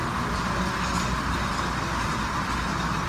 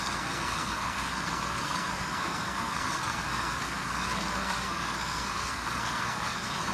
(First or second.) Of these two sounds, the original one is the first